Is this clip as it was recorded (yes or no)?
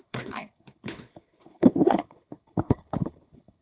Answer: no